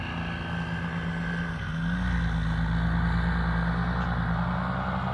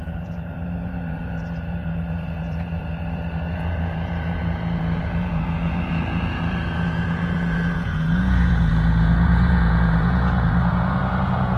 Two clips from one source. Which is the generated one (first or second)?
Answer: second